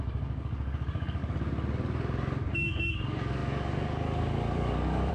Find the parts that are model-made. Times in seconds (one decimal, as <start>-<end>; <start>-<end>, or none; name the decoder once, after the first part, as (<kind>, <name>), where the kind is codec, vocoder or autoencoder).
0.0-1.2 (codec, DAC); 2.5-5.1